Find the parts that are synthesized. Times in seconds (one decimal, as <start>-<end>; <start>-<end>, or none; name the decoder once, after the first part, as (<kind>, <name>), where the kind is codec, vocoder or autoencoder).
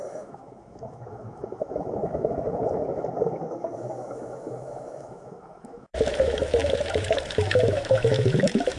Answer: 0.0-8.8 (autoencoder, DAC-VAE)